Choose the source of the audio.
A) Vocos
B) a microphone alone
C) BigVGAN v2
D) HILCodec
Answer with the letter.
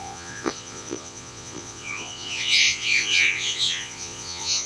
A